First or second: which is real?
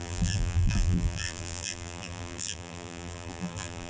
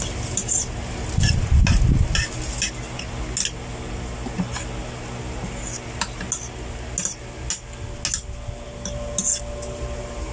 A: second